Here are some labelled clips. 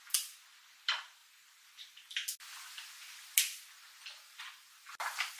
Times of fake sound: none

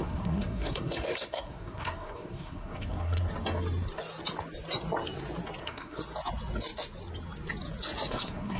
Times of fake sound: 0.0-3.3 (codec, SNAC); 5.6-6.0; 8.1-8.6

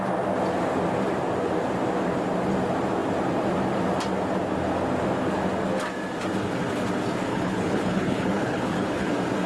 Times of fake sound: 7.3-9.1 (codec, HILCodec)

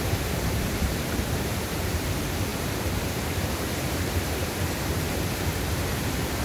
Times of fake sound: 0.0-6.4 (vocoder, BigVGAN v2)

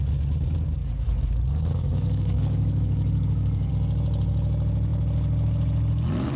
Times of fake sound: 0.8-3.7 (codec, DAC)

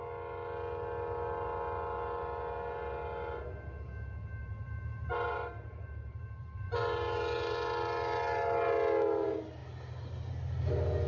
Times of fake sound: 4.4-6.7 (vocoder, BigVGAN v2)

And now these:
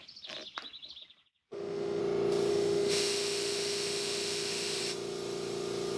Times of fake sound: 1.5-2.0 (autoencoder, DAC-VAE); 2.5-4.8